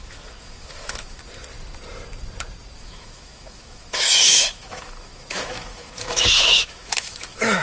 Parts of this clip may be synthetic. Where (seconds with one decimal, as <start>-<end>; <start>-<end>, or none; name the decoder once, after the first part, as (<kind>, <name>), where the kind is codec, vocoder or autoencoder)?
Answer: 0.0-1.2 (autoencoder, DAC-VAE); 2.8-7.6